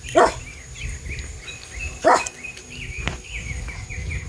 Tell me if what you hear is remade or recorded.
recorded